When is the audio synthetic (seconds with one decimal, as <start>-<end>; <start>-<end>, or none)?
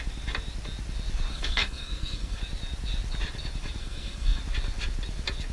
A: 1.3-2.4; 3.8-4.4